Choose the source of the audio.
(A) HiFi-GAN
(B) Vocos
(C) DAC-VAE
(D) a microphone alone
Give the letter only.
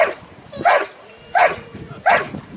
B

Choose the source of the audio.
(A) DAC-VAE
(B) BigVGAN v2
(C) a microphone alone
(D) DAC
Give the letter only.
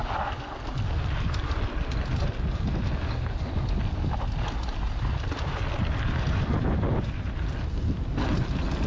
C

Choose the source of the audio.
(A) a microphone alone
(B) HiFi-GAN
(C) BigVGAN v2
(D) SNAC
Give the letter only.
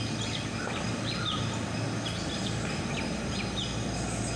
A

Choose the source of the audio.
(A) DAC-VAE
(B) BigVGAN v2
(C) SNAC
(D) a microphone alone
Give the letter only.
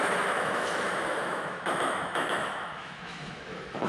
A